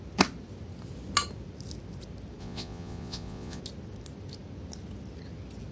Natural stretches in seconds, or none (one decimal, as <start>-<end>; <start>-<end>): 0.0-2.4; 3.6-5.7